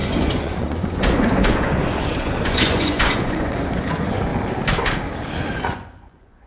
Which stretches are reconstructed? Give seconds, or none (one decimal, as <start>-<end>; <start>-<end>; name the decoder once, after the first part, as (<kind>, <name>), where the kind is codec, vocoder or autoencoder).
0.0-4.3 (vocoder, Vocos); 5.5-6.5